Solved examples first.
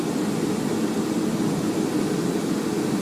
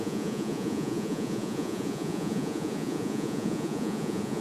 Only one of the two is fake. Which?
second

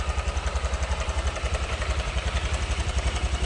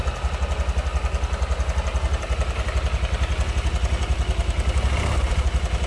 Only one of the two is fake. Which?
first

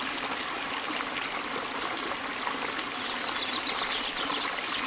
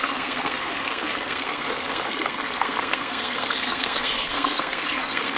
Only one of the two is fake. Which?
second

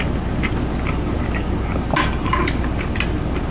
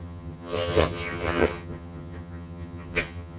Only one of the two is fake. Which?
second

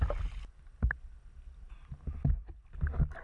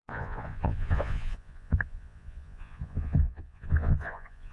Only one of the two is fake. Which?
second